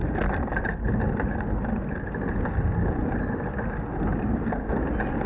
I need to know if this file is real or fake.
real